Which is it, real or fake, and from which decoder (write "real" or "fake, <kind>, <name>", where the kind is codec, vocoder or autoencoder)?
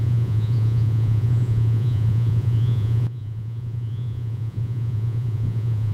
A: fake, vocoder, Vocos